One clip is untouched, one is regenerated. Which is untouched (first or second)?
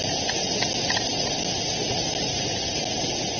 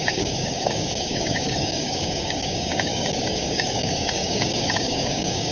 first